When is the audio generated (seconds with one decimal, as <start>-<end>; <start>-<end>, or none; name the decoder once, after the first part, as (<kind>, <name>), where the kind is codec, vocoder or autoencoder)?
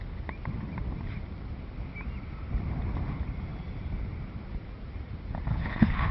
5.5-6.1 (codec, HILCodec)